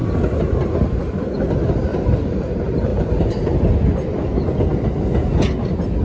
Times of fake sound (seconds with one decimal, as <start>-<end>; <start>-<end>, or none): 1.9-2.5; 2.9-3.5